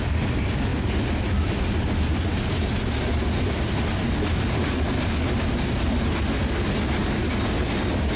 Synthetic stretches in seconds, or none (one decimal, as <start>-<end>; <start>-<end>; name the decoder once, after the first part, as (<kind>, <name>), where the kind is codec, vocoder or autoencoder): none